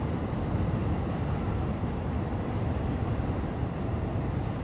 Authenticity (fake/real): real